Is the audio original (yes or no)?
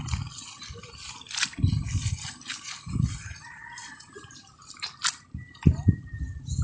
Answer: no